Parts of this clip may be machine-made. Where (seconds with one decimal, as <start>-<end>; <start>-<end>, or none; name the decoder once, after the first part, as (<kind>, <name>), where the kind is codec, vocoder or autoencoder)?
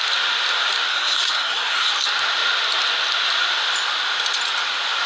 0.9-1.9 (codec, SNAC)